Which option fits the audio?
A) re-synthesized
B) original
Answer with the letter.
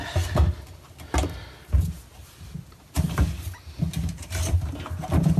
B